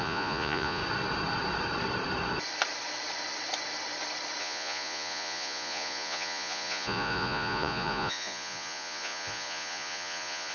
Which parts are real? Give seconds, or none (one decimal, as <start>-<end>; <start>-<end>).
0.8-4.4